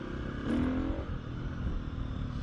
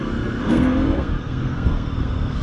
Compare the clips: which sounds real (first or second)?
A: first